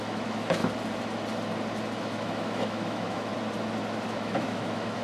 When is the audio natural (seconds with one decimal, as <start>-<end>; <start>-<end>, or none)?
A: 0.6-2.0; 3.3-4.1